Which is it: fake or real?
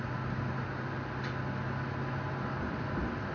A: real